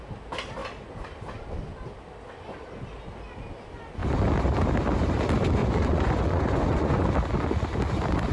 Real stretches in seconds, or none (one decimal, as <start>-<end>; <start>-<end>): 0.0-5.6; 7.1-8.3

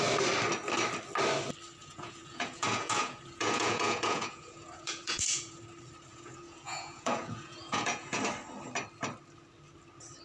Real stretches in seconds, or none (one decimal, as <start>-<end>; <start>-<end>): 0.0-1.8; 5.6-6.1; 8.2-10.2